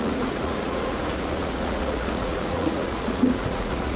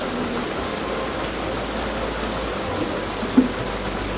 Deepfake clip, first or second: first